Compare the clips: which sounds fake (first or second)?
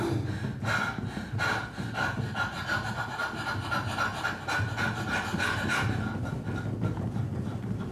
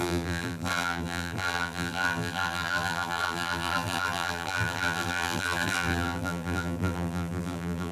second